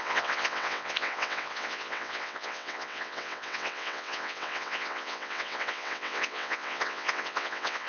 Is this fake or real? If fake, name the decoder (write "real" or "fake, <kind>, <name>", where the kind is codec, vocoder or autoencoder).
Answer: fake, vocoder, WaveNeXt